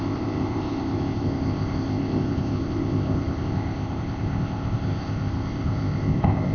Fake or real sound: fake